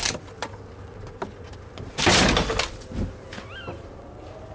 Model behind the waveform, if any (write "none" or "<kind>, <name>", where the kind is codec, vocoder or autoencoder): none